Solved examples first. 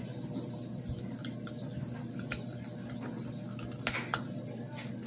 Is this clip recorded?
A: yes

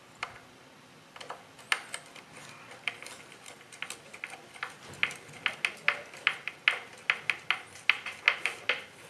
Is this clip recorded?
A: yes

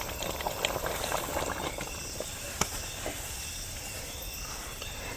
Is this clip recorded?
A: yes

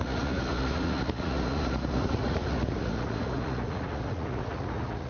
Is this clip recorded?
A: no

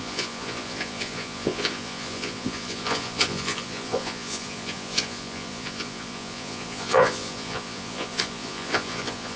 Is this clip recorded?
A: no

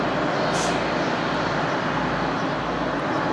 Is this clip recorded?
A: yes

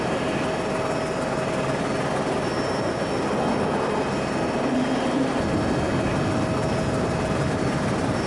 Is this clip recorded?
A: yes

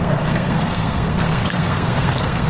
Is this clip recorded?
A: no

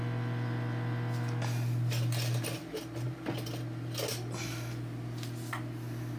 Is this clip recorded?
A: yes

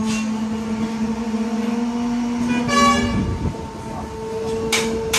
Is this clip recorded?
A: yes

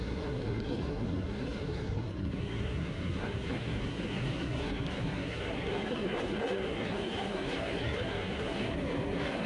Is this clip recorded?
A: no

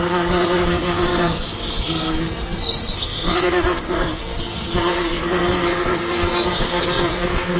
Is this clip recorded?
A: no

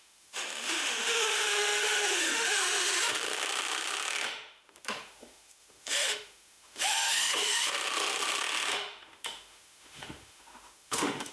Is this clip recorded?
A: no